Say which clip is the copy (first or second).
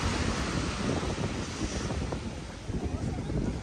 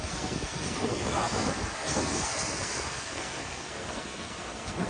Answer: second